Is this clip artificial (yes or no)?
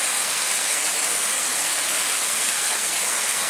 yes